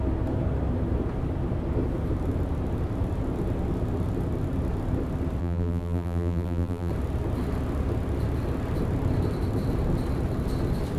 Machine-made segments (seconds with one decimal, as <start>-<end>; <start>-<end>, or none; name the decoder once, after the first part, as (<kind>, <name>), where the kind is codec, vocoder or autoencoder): 5.4-6.9 (vocoder, BigVGAN v2)